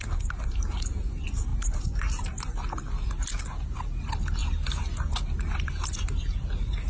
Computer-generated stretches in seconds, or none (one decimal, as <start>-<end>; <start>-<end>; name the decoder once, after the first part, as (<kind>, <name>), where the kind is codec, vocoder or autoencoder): none

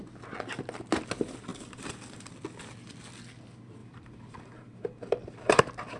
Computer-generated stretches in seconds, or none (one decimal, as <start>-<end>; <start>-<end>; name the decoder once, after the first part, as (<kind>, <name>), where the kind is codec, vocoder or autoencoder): 1.5-2.3 (vocoder, BigVGAN v2); 3.8-5.6

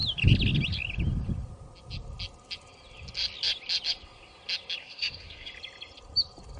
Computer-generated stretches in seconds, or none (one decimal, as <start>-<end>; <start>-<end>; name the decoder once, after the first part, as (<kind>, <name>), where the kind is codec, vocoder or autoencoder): 4.8-5.5 (codec, SNAC)

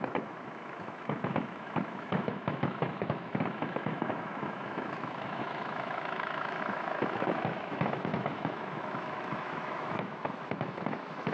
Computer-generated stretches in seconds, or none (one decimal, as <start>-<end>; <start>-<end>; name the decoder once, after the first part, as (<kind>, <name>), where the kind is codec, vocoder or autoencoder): 0.0-11.3 (autoencoder, DAC-VAE)

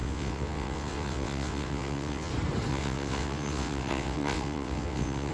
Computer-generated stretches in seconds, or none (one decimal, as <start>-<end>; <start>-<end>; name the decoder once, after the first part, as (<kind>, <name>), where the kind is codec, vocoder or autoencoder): 0.0-2.3 (vocoder, WaveNeXt); 2.7-5.3

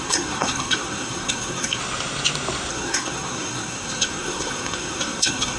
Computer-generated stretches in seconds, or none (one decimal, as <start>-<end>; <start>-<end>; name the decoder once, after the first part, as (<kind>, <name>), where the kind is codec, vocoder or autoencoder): 0.0-1.8 (codec, SNAC); 2.7-5.6